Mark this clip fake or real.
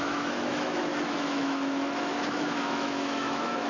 fake